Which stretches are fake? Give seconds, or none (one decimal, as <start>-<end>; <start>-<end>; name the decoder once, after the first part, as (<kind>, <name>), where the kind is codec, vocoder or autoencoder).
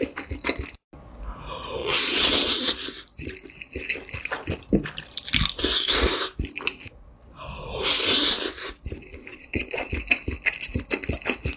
1.8-2.7 (vocoder, Vocos); 9.3-9.9